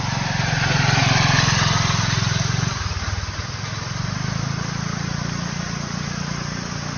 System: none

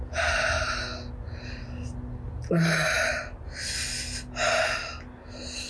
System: none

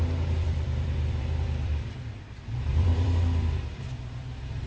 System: vocoder, BigVGAN v2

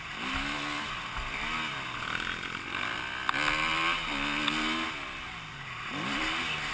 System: none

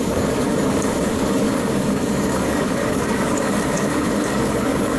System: codec, DAC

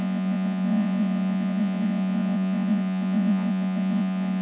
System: vocoder, Vocos